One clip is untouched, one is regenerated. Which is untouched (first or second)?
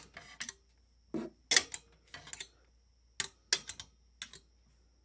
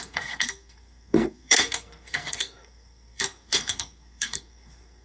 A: first